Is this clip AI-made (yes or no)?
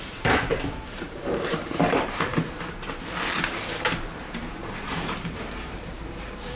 yes